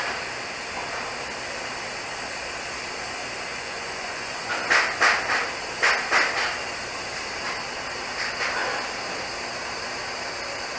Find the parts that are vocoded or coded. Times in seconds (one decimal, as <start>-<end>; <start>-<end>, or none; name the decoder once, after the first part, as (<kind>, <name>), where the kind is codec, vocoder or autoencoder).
3.5-4.5 (vocoder, Vocos)